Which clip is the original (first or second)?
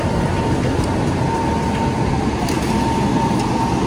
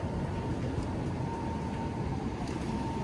first